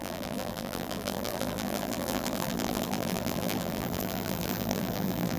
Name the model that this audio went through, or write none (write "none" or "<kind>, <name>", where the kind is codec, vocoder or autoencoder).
vocoder, BigVGAN v2